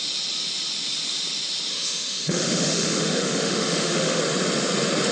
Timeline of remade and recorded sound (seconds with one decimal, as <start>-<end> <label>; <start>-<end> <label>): 0.0-1.7 recorded; 1.7-4.2 remade; 4.2-5.1 recorded